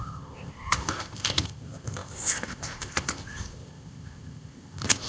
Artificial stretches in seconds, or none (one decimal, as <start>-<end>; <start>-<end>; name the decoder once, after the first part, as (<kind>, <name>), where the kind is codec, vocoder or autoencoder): 0.0-5.1 (codec, ZipCodec)

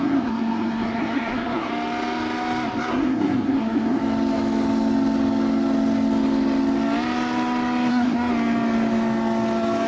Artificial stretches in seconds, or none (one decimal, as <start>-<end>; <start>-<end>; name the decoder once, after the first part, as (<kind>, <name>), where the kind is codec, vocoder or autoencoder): 0.0-1.7 (codec, SNAC); 2.9-4.0; 7.9-8.3

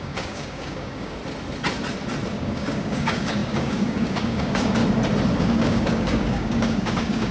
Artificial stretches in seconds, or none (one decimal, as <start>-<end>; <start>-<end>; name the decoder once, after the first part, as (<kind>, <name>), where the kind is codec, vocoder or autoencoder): 0.0-1.2 (codec, DAC); 2.3-4.8; 5.4-7.3